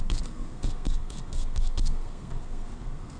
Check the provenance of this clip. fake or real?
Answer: fake